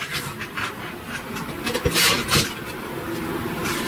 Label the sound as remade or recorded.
remade